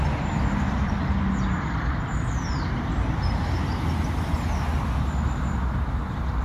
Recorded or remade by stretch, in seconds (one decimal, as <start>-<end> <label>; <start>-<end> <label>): 0.0-3.7 remade; 3.7-4.8 recorded; 4.8-6.4 remade